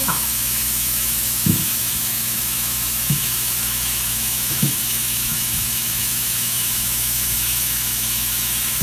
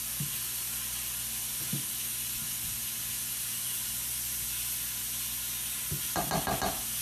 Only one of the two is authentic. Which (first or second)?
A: second